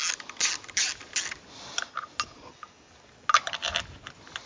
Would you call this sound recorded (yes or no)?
yes